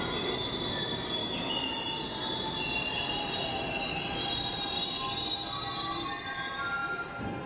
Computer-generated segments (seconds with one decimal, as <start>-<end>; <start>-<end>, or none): 1.2-1.7